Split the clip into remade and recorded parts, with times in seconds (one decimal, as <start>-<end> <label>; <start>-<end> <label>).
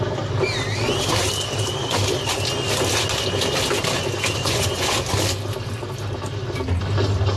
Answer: 0.0-4.4 recorded; 4.4-5.0 remade; 5.0-7.4 recorded